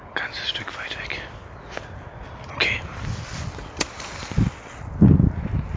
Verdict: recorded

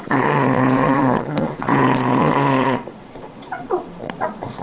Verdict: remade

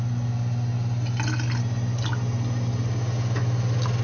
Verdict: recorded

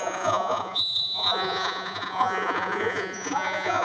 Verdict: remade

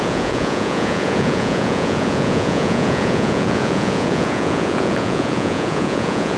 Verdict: remade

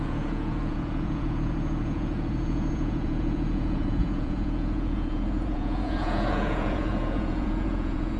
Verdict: remade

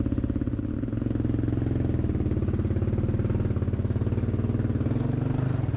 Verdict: recorded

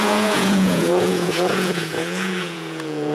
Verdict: remade